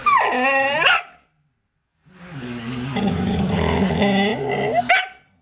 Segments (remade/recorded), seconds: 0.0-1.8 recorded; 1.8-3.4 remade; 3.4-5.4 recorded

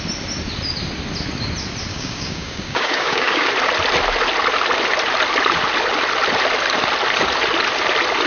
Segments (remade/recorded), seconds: 0.0-1.9 recorded; 1.9-3.5 remade; 3.5-8.3 recorded

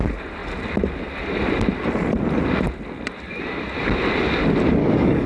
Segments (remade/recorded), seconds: 0.0-4.8 recorded; 4.8-5.3 remade

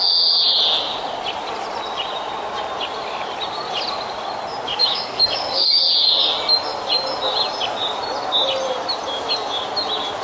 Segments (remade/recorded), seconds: 0.0-4.7 recorded; 4.7-5.8 remade; 5.8-10.2 recorded

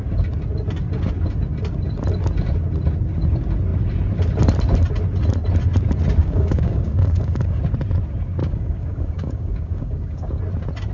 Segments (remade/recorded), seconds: 0.0-6.2 recorded; 6.2-7.6 remade; 7.6-8.4 recorded; 8.4-10.4 remade; 10.4-10.9 recorded